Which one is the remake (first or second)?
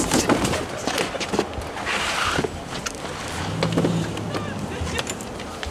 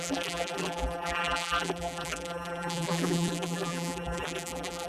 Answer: second